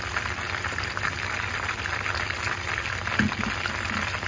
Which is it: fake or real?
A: real